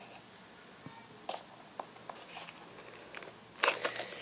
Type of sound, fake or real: real